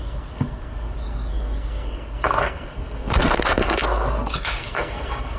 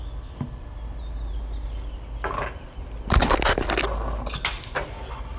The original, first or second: second